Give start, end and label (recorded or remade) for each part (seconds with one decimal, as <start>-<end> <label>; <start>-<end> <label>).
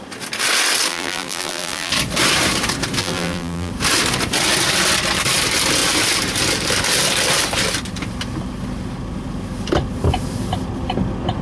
0.0-0.9 recorded; 0.9-1.9 remade; 1.9-3.0 recorded; 3.0-3.7 remade; 3.7-11.4 recorded